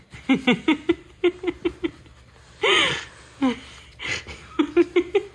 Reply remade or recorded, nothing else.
recorded